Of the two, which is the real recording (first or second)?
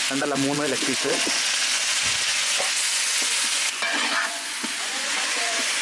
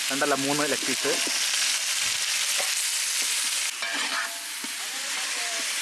second